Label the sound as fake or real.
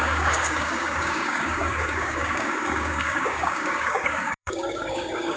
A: fake